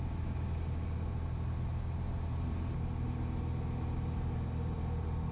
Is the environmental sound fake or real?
real